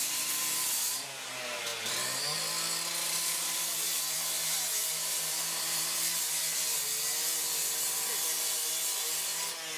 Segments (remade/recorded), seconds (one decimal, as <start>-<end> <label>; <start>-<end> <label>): 0.0-1.7 recorded; 1.7-6.2 remade; 6.2-9.8 recorded